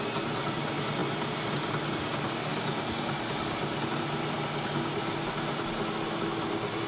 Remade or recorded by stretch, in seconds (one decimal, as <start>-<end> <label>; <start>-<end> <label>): 0.0-6.9 recorded